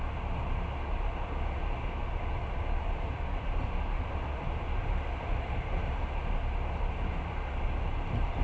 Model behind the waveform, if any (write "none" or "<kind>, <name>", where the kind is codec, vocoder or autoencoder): none